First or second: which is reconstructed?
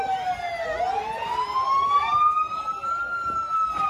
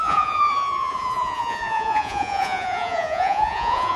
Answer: second